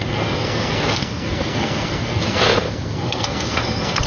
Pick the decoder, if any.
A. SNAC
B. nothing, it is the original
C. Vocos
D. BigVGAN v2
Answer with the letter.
A